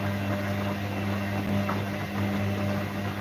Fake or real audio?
real